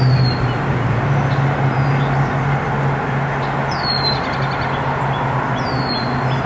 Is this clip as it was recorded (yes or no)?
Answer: yes